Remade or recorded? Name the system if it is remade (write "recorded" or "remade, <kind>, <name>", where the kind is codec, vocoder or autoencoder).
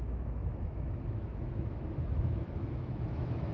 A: remade, autoencoder, DAC-VAE